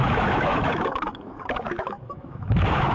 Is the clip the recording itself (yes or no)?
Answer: no